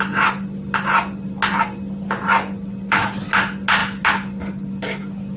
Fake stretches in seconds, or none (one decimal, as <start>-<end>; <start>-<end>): none